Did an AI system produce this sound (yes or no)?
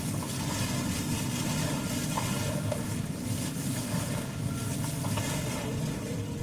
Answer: no